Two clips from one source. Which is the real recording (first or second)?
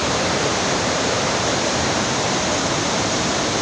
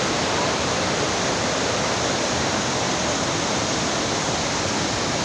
second